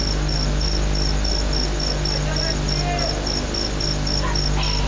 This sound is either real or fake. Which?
real